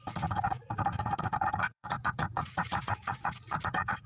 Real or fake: fake